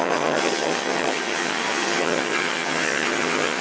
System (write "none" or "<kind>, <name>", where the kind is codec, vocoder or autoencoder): vocoder, HiFi-GAN